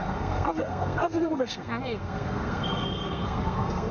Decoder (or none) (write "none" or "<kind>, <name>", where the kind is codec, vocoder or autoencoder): codec, SNAC